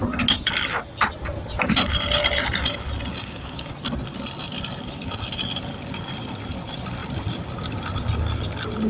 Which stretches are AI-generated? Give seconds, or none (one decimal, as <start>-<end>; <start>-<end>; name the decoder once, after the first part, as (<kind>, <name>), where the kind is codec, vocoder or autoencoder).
3.1-3.7 (codec, DAC)